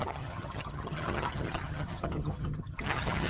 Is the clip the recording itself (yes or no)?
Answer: no